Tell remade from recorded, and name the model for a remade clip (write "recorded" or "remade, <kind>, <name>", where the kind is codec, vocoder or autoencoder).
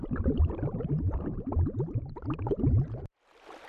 recorded